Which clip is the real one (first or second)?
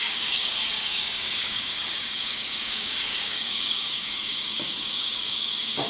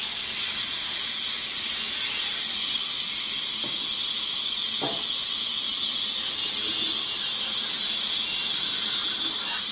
second